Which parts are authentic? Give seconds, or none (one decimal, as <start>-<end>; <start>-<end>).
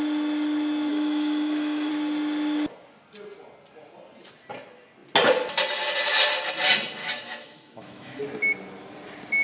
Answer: 0.0-0.9; 1.9-7.0; 8.2-9.4